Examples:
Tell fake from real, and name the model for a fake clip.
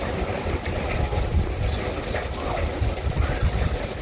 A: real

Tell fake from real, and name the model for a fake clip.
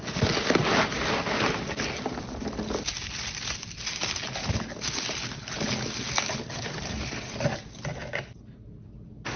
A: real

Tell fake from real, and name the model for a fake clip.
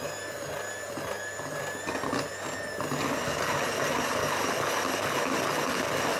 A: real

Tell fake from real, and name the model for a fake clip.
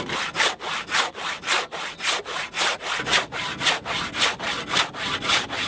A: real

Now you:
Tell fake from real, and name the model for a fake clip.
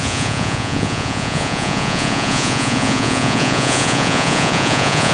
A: fake, vocoder, Vocos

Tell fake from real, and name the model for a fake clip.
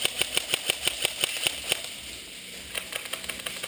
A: real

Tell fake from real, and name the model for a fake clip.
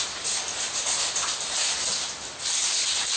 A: real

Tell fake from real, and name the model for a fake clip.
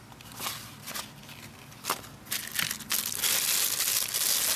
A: real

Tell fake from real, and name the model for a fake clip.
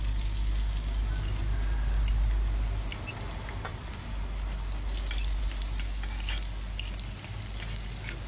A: real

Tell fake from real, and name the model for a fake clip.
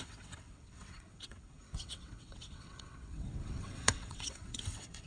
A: fake, vocoder, WaveNeXt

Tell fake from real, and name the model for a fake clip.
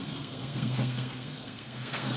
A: fake, codec, SNAC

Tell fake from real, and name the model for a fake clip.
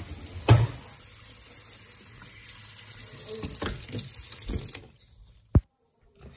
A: real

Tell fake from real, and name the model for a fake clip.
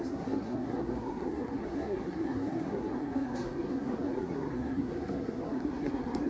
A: fake, codec, SNAC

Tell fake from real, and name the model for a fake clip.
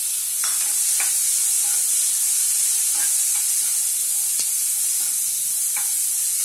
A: real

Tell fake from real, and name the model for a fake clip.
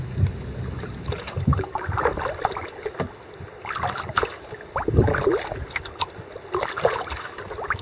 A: real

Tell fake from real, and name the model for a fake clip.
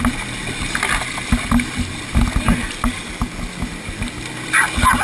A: real